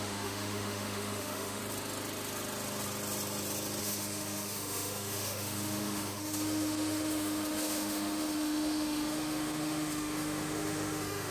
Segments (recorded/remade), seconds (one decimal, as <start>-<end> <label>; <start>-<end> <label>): 0.0-1.6 remade; 1.6-3.8 recorded; 3.8-11.3 remade